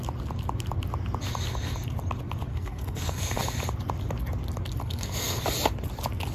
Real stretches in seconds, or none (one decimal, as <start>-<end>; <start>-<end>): 0.0-2.5; 3.4-4.8; 5.4-6.3